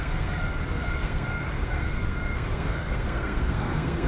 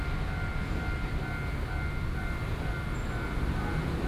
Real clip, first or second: second